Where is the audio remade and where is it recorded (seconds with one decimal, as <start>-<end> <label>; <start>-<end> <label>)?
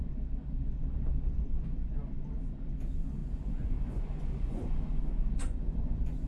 0.0-3.2 recorded; 3.2-5.0 remade; 5.0-5.4 recorded; 5.4-6.3 remade